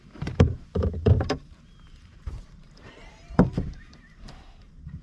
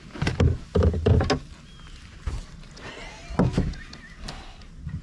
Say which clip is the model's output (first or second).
first